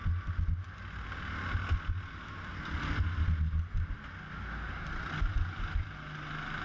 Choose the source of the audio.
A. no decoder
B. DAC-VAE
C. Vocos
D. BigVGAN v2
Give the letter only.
A